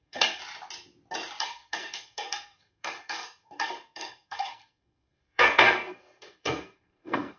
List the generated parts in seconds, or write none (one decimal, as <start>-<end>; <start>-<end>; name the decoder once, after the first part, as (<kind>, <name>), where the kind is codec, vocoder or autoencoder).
0.0-0.4 (codec, SNAC); 1.4-7.4